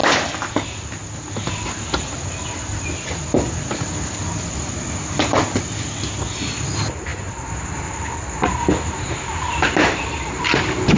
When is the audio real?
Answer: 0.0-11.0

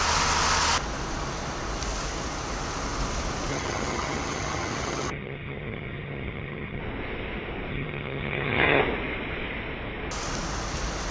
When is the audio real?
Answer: 0.0-3.5; 6.8-7.7; 8.8-11.1

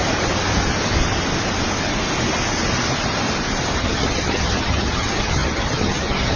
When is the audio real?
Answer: 0.0-3.8

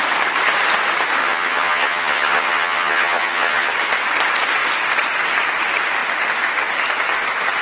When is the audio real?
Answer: 0.0-1.2; 3.7-7.6

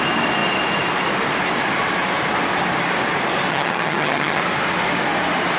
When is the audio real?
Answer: 0.0-3.5; 4.4-5.6